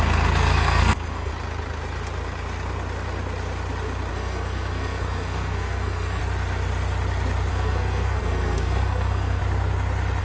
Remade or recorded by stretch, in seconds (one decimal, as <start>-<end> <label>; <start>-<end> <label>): 0.0-1.3 remade; 1.3-4.1 recorded; 4.1-6.2 remade; 6.2-7.5 recorded; 7.5-9.4 remade; 9.4-10.2 recorded